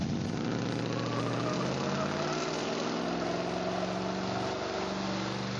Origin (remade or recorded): recorded